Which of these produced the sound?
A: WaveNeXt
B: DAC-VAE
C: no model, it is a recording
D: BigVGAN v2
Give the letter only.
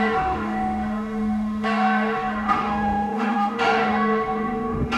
B